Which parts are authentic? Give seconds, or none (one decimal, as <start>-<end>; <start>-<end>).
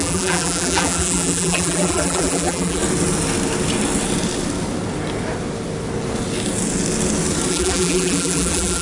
2.8-7.5